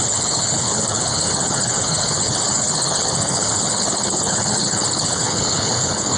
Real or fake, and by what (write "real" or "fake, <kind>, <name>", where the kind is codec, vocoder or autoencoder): fake, codec, HILCodec